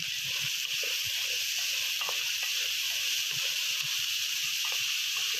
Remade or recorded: remade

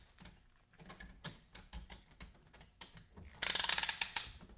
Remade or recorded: recorded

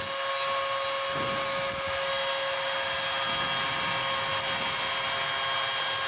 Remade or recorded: recorded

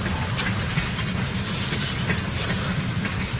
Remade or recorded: recorded